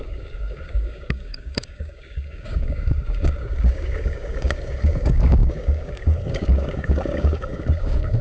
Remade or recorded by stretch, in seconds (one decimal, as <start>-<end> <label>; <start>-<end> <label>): 0.0-8.2 remade